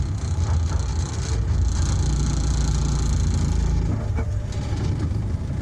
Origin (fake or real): real